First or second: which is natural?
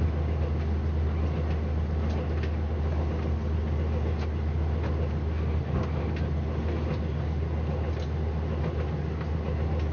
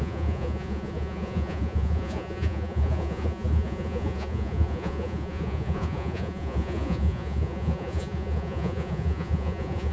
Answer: first